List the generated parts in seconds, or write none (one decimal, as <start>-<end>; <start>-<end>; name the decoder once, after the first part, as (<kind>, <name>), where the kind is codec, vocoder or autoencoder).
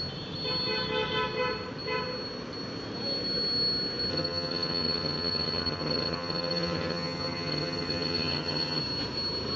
4.1-8.8 (vocoder, HiFi-GAN)